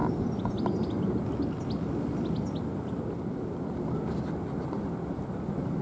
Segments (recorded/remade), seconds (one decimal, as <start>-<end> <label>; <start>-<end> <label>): 0.0-5.8 recorded